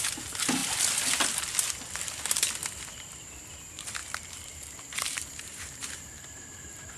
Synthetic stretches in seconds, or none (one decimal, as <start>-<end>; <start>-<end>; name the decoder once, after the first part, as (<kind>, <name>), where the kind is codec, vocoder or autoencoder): 4.0-7.0 (vocoder, BigVGAN v2)